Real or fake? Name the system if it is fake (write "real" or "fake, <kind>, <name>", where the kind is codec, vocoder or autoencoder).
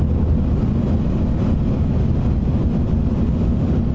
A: real